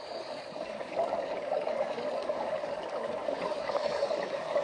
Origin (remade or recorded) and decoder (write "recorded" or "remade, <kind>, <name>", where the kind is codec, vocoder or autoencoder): remade, codec, DAC